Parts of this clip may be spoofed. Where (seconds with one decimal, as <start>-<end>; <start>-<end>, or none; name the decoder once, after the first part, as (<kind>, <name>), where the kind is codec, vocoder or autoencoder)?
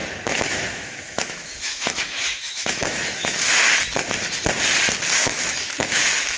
0.0-3.8 (autoencoder, DAC-VAE); 5.2-6.4